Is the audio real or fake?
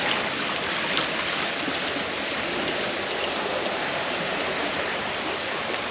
real